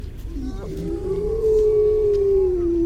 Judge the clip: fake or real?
real